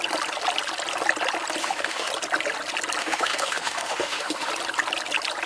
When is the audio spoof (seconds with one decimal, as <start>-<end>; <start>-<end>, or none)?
1.6-2.1; 3.0-4.5